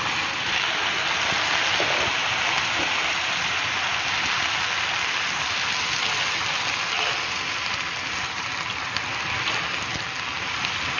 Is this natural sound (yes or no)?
yes